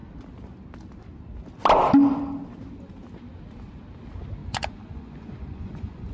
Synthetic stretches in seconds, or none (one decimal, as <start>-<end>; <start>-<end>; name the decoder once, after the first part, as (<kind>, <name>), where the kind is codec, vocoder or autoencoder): 4.4-6.1 (vocoder, Vocos)